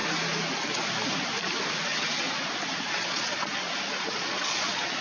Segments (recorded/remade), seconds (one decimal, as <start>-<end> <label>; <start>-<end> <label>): 0.0-3.0 recorded; 3.0-3.5 remade; 3.5-4.1 recorded; 4.1-5.0 remade